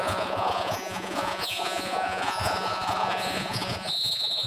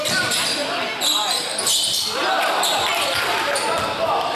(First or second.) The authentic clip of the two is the second